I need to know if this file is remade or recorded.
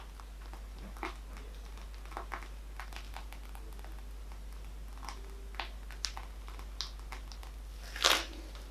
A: recorded